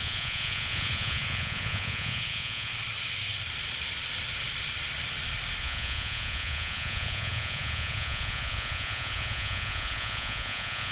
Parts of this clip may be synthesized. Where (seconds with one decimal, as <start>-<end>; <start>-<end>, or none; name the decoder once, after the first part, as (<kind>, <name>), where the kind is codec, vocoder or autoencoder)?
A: 0.0-2.7 (vocoder, Vocos); 5.6-10.9